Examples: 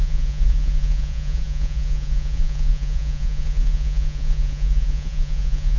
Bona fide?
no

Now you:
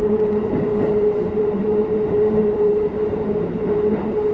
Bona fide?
no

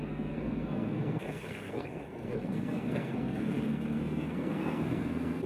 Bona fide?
no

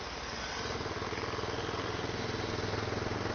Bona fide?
yes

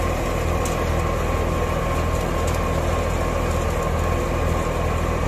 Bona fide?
yes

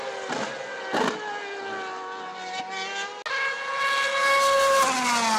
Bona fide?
yes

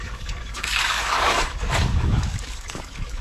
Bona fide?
no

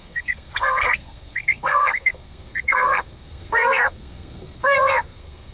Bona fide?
no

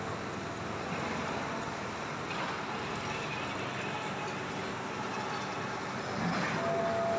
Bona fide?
yes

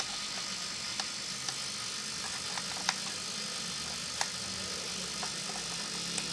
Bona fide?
yes